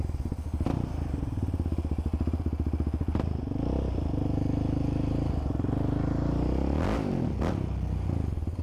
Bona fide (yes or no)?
yes